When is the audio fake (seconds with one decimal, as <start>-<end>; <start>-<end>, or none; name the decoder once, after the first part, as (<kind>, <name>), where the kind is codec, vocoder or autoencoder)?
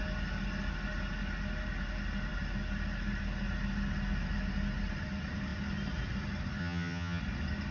6.6-7.2 (vocoder, HiFi-GAN)